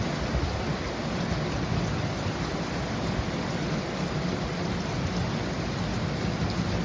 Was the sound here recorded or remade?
recorded